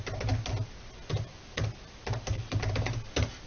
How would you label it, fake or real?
real